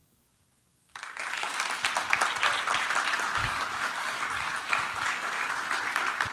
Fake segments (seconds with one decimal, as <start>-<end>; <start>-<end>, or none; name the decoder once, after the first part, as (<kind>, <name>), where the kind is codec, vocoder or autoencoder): 0.0-1.6 (codec, DAC); 3.4-5.5